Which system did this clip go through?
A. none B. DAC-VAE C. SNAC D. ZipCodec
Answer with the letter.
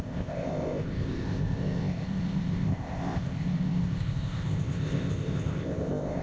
D